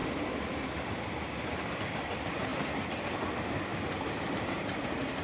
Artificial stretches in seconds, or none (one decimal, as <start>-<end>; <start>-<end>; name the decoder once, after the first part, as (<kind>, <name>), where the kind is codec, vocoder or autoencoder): 0.0-3.7 (vocoder, BigVGAN v2); 4.3-5.2